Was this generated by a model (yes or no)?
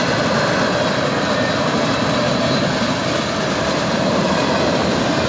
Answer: no